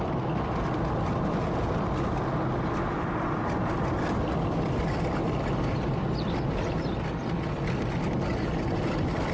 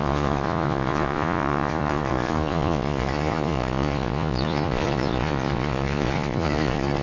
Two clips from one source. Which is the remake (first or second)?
second